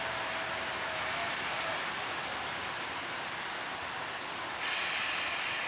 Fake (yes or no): no